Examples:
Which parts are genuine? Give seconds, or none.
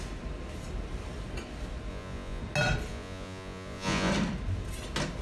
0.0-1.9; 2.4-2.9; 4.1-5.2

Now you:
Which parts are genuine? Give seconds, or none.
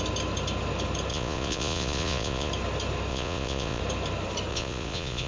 0.0-1.1; 2.5-3.1; 3.8-4.5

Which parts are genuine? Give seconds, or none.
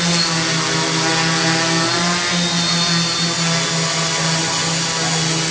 0.0-5.5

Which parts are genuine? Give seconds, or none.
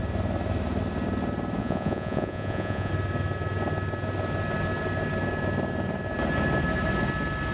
0.0-1.6; 2.9-7.5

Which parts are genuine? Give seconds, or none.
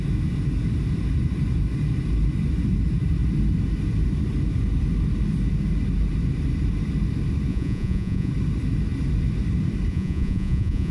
0.0-7.5; 8.3-9.9